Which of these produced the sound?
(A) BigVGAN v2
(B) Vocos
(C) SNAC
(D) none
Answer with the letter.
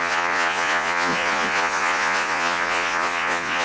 B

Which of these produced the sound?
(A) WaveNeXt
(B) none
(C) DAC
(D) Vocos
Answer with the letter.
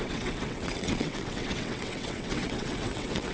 A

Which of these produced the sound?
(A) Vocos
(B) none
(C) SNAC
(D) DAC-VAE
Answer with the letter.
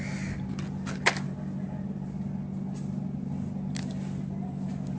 B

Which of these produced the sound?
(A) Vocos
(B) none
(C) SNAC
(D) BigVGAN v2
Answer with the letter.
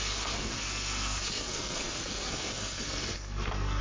C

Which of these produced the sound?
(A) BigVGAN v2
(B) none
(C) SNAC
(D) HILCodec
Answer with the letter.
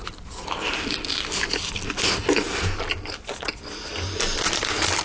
B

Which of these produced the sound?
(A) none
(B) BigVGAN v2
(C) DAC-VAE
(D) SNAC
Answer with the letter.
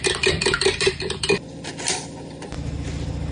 B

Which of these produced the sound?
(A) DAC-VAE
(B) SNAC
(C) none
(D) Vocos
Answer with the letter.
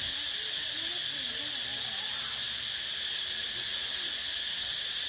C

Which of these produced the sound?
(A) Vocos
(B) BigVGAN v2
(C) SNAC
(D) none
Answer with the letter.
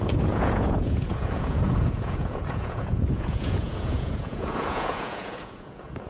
A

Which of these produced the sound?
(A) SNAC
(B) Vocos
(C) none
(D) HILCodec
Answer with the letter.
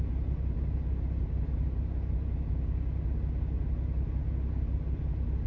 C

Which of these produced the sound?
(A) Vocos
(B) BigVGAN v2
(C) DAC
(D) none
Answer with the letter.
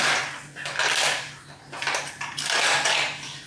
D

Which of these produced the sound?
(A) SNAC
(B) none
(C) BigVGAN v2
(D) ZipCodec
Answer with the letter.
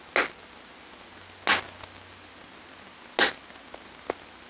B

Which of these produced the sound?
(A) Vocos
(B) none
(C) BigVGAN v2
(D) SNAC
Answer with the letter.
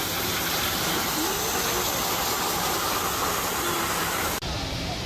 B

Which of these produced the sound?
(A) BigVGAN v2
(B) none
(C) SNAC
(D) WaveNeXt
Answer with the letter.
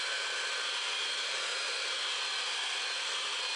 B